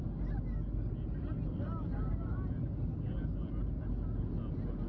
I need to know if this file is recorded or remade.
recorded